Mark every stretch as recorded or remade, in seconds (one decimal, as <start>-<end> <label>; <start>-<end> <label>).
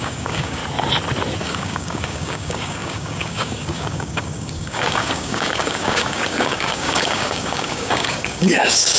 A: 0.0-0.6 remade; 0.6-1.4 recorded; 1.4-9.0 remade